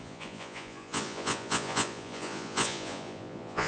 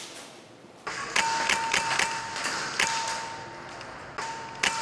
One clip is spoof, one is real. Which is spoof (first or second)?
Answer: first